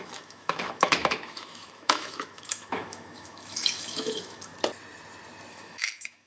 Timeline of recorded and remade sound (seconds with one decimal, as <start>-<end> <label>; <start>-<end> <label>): 0.0-4.5 remade; 4.5-5.5 recorded; 5.5-6.3 remade